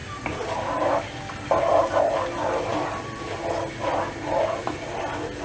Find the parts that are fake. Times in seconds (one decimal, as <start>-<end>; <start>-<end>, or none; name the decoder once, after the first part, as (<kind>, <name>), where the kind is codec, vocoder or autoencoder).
2.7-4.0 (vocoder, BigVGAN v2)

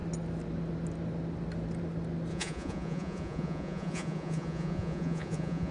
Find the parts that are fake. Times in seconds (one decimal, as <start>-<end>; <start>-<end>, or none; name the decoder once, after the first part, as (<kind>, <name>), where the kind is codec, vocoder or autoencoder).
2.3-5.7 (vocoder, Vocos)

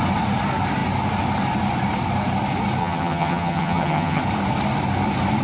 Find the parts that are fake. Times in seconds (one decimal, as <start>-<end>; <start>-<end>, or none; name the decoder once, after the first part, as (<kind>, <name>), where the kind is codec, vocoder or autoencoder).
2.8-4.2 (vocoder, HiFi-GAN)

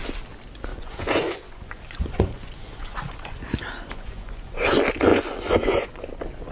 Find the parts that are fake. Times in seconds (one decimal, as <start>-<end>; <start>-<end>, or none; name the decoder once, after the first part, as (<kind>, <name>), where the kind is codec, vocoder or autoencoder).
0.7-4.6 (vocoder, Vocos); 5.1-6.0

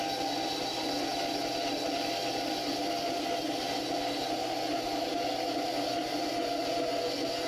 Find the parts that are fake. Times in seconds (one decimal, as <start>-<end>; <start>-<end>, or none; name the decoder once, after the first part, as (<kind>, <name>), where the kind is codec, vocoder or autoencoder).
none

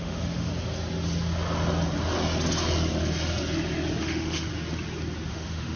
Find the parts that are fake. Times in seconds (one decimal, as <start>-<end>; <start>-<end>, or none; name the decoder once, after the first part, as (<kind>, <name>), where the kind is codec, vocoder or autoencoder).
0.0-0.5 (autoencoder, DAC-VAE); 4.0-4.5; 5.3-5.8